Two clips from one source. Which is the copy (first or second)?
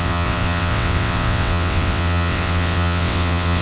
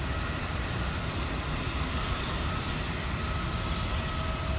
first